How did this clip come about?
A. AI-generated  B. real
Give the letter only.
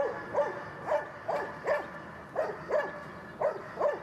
B